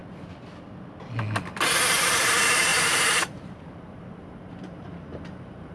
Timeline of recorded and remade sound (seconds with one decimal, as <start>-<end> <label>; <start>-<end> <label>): 0.0-2.2 recorded; 2.2-5.7 remade